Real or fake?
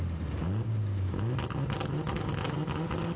real